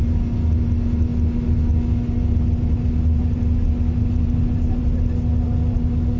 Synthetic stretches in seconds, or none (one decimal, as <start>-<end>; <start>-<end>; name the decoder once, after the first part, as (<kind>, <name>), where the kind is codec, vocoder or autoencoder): none

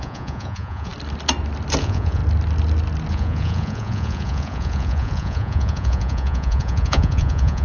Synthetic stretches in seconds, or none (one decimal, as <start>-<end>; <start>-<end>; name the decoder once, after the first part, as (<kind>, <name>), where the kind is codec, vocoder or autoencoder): 0.0-0.9 (vocoder, Vocos); 1.8-2.2; 3.1-7.6

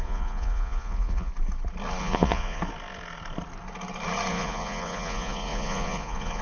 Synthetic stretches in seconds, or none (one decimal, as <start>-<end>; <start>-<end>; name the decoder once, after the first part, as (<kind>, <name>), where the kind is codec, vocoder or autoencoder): 0.0-1.3 (vocoder, Vocos); 2.0-2.6; 4.3-6.4

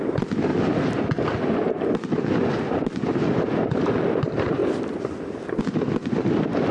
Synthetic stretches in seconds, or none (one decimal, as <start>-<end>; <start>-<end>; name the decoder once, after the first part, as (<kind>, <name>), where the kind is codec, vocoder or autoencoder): none

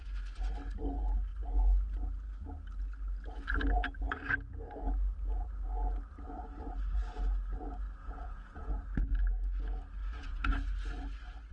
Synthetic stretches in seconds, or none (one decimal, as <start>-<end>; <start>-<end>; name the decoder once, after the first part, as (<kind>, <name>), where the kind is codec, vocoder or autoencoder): 8.0-8.7 (vocoder, Vocos); 10.0-10.5

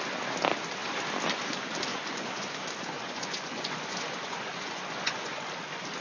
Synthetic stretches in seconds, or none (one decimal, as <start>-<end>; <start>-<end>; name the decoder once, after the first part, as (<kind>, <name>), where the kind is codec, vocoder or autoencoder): 1.9-5.5 (vocoder, Vocos)